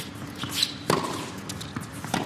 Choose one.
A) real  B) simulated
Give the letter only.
A